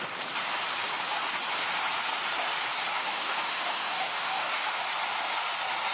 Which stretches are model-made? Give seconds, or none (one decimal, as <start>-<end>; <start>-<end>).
3.0-4.8